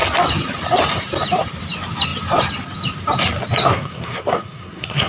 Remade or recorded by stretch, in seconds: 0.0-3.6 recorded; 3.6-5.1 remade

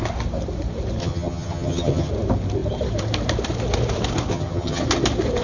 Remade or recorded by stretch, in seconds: 0.0-1.0 recorded; 1.0-2.1 remade; 2.1-4.3 recorded; 4.3-4.8 remade; 4.8-5.4 recorded